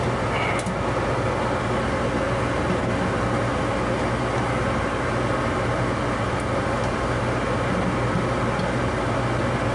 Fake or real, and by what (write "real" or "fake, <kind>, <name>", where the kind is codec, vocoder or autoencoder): real